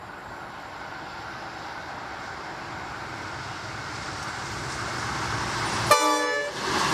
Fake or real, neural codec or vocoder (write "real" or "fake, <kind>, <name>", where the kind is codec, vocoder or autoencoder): real